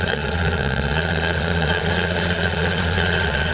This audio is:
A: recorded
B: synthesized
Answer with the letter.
B